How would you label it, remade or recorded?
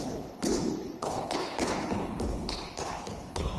remade